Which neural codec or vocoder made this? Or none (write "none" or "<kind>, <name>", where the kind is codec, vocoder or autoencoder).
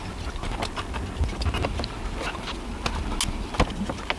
none